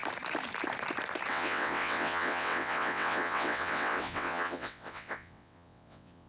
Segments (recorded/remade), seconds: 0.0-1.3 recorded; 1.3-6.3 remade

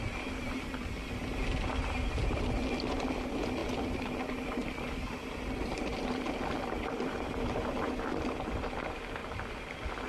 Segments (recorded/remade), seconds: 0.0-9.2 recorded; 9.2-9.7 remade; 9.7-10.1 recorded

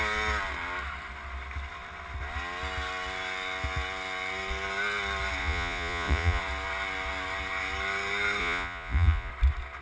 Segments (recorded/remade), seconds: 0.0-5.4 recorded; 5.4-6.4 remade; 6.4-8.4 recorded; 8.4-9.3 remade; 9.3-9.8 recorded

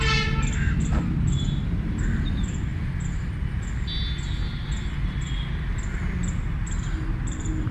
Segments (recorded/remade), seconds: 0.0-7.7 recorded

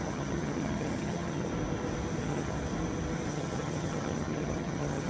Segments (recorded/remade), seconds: 0.0-1.5 remade; 1.5-2.2 recorded; 2.2-2.6 remade; 2.6-3.3 recorded; 3.3-5.1 remade

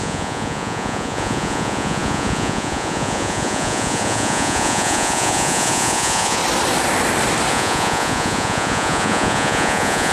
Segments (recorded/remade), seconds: 0.0-6.4 remade; 6.4-7.5 recorded; 7.5-10.1 remade

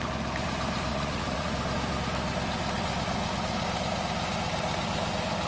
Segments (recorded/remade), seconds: 0.0-0.9 recorded; 0.9-1.5 remade; 1.5-5.5 recorded